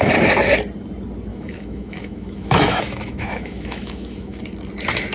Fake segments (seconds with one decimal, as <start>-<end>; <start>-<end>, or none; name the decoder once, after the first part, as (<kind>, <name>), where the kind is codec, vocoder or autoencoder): 1.3-4.4 (autoencoder, DAC-VAE)